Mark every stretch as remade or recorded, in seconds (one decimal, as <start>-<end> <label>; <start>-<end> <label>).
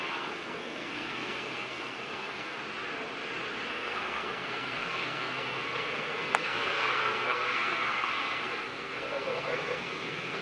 0.0-2.6 remade; 2.6-3.7 recorded; 3.7-10.4 remade